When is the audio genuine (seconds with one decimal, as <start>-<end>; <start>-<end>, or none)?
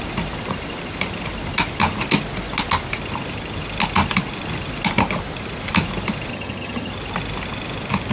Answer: 0.0-6.3; 6.9-8.1